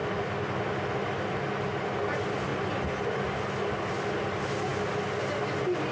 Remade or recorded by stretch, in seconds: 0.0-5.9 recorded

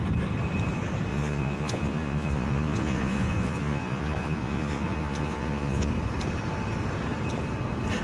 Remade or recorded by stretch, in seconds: 0.0-1.1 recorded; 1.1-5.9 remade; 5.9-8.0 recorded

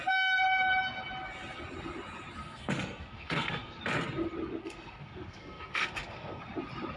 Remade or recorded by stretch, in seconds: 0.0-2.4 recorded; 2.4-3.8 remade; 3.8-4.6 recorded; 4.6-6.4 remade; 6.4-7.0 recorded

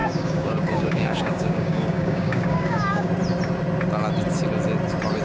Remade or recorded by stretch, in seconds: 0.0-3.1 remade; 3.1-5.2 recorded

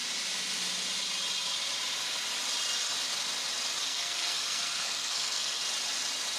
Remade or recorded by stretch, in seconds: 0.0-3.8 recorded; 3.8-5.6 remade; 5.6-6.4 recorded

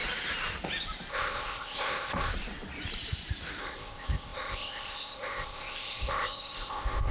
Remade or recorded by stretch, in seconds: 0.0-1.1 recorded; 1.1-2.3 remade; 2.3-3.6 recorded; 3.6-7.1 remade

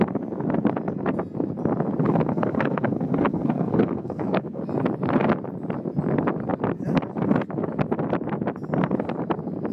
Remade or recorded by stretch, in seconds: 0.0-2.0 recorded; 2.0-4.6 remade; 4.6-9.7 recorded

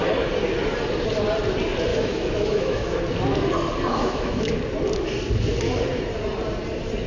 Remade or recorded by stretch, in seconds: 0.0-1.9 recorded; 1.9-3.0 remade; 3.0-3.9 recorded; 3.9-4.5 remade; 4.5-7.1 recorded